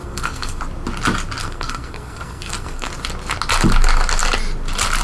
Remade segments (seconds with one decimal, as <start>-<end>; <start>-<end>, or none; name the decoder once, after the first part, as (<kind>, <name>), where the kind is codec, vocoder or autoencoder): 0.0-0.6 (codec, SNAC); 1.4-2.9